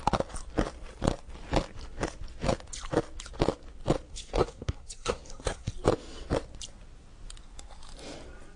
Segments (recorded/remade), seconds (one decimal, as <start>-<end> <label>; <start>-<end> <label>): 0.0-4.1 recorded; 4.1-5.7 remade; 5.7-8.6 recorded